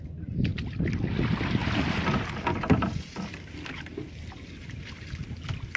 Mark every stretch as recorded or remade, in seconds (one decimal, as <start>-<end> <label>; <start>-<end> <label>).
0.0-5.8 recorded